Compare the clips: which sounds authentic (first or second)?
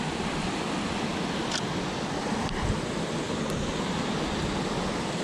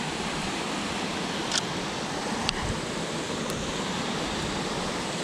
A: first